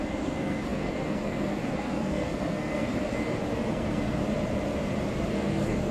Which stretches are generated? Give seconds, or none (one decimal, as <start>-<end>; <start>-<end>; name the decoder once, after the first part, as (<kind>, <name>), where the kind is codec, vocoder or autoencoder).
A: 0.0-2.9 (codec, SNAC); 3.7-4.2; 5.3-5.9